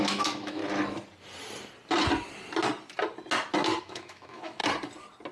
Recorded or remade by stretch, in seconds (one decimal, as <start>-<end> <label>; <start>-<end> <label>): 0.0-0.6 remade; 0.6-3.8 recorded; 3.8-4.6 remade; 4.6-5.3 recorded